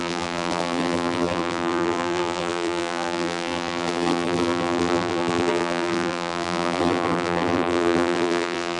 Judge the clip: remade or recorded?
remade